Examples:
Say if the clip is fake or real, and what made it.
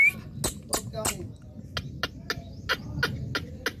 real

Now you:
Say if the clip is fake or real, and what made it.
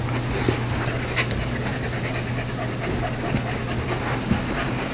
real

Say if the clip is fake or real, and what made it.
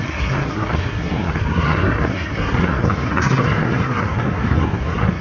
fake, codec, SNAC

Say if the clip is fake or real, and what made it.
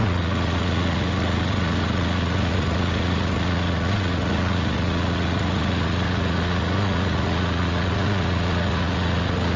fake, vocoder, Vocos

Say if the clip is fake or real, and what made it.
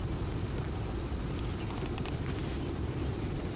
fake, vocoder, BigVGAN v2